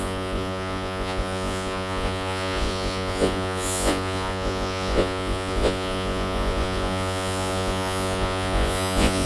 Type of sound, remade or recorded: remade